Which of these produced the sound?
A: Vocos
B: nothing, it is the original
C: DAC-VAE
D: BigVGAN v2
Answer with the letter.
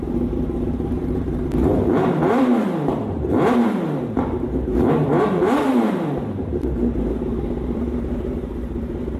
D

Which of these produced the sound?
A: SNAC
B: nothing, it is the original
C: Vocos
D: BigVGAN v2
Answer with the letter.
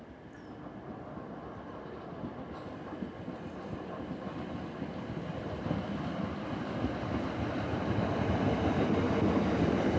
B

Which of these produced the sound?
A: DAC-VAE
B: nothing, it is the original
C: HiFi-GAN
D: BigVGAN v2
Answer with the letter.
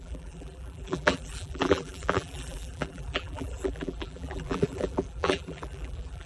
D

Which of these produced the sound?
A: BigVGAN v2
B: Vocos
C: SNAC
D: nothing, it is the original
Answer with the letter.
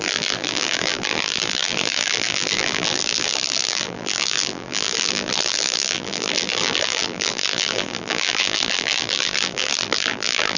A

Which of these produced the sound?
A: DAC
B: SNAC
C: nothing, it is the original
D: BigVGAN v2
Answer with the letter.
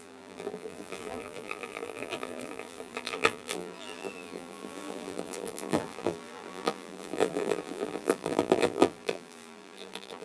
D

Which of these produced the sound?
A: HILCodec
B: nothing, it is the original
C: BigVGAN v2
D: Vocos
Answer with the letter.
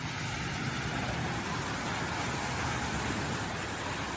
B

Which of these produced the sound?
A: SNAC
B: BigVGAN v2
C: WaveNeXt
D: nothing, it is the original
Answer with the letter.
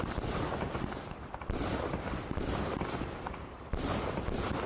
B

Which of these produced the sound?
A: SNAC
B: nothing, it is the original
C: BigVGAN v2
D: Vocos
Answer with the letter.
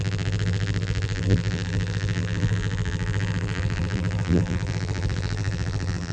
C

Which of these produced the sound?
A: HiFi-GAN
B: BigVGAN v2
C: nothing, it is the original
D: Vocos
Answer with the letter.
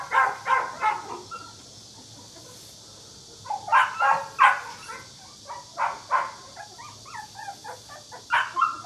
C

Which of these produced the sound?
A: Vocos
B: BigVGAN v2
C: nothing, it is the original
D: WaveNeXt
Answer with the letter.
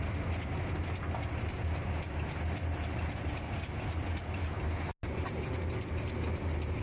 C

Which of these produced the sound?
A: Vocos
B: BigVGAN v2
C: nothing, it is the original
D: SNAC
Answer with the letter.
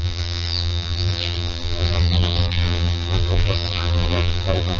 B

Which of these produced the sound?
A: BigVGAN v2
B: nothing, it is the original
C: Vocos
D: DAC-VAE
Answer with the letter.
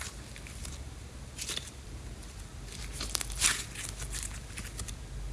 B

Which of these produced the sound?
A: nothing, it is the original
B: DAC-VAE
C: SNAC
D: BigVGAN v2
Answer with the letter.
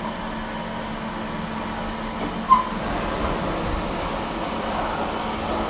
A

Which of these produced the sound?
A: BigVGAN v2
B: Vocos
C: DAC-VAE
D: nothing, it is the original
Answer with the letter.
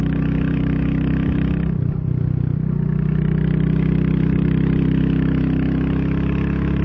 D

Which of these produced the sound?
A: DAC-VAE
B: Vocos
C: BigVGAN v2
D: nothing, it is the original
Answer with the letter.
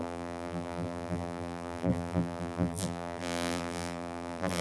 C